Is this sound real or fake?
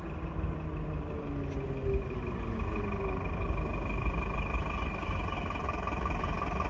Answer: real